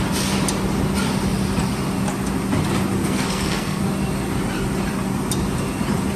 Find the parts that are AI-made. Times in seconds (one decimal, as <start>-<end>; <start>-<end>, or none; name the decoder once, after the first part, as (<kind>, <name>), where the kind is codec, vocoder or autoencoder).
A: 3.0-3.8 (codec, SNAC)